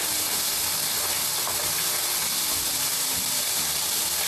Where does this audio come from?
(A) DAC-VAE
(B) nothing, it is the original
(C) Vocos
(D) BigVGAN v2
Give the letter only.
B